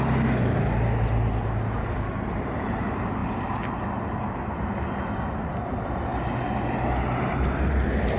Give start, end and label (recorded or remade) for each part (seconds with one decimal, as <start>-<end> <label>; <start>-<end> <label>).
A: 0.0-8.2 recorded